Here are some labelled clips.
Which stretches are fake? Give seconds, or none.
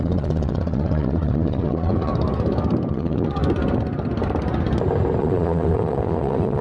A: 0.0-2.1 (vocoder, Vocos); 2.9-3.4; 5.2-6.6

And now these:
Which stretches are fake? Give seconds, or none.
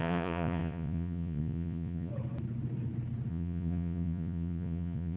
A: 0.0-2.1 (vocoder, Vocos); 3.3-5.2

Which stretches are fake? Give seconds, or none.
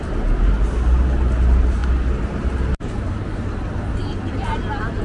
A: none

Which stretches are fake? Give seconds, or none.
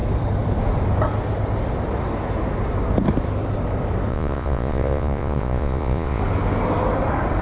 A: 4.1-6.2 (vocoder, Vocos)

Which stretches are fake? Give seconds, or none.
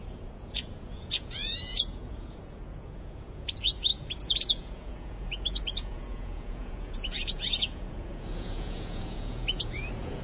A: 0.0-10.2 (vocoder, Vocos)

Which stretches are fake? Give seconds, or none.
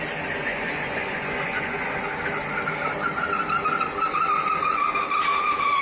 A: 0.5-2.0 (vocoder, Vocos)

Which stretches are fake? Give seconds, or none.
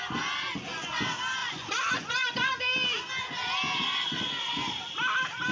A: 1.4-2.5 (vocoder, Vocos)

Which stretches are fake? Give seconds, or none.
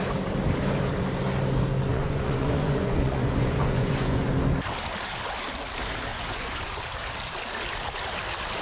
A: 1.9-4.3 (vocoder, Vocos); 6.1-6.8